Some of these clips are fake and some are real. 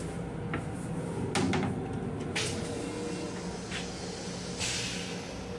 real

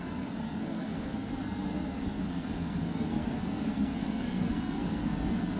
fake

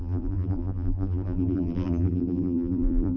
fake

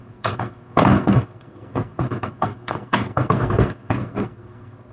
fake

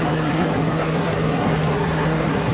fake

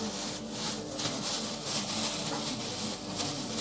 real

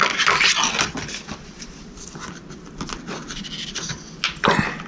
real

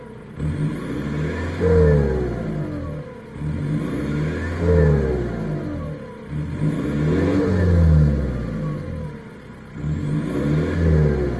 real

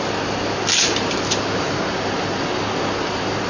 real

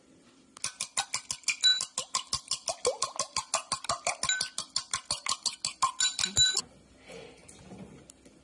real